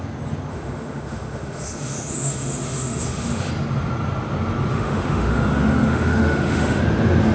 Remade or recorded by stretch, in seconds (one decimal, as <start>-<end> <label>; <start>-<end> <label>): 0.0-0.5 recorded; 0.5-3.5 remade; 3.5-4.7 recorded; 4.7-6.8 remade; 6.8-7.3 recorded